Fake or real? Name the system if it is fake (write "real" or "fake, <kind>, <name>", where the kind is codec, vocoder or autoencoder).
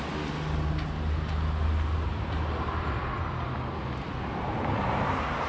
real